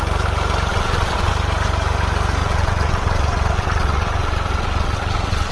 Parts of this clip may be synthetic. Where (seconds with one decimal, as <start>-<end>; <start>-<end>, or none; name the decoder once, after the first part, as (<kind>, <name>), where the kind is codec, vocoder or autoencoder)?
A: 0.7-1.3 (vocoder, WaveNeXt); 2.4-5.5